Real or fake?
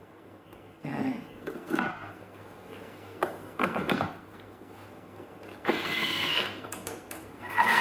fake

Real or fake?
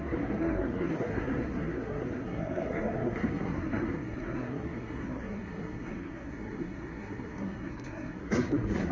fake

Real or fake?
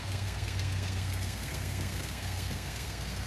fake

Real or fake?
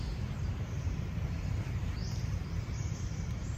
fake